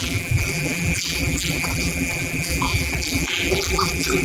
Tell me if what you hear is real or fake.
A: fake